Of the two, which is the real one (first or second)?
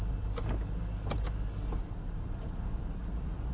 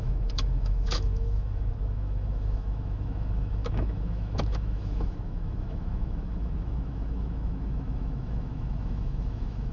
first